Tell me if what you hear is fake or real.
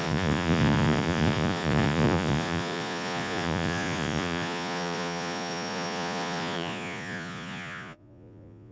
fake